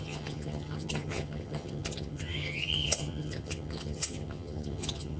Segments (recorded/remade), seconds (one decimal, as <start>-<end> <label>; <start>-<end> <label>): 0.0-5.2 remade